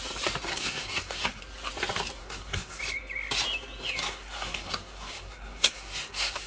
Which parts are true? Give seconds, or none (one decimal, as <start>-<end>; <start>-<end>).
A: 0.0-0.5; 1.4-2.2; 2.8-4.0